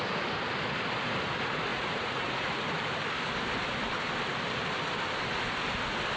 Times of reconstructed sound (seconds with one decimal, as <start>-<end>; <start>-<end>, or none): 1.7-2.7